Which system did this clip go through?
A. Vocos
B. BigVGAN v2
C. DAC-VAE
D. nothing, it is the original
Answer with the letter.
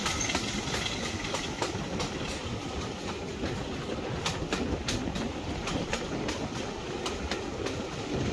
D